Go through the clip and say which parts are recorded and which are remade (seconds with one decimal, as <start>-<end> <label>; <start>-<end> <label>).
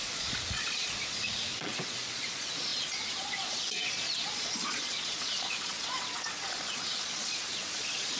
0.0-8.2 remade